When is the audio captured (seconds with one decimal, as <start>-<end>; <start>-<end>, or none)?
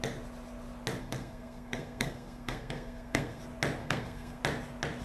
0.0-1.0; 3.4-3.8; 4.4-5.0